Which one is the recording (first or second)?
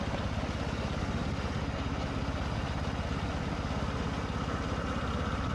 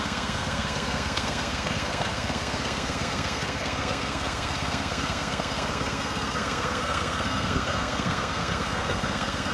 first